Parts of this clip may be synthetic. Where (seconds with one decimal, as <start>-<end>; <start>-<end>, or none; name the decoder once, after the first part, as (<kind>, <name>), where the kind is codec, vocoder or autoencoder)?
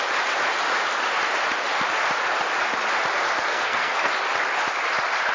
3.5-4.1 (codec, SNAC)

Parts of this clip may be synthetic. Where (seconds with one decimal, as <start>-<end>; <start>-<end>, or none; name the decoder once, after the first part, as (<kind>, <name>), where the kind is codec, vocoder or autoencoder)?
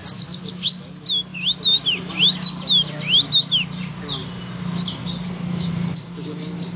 none